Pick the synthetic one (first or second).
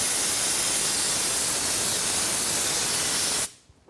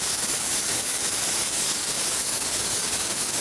second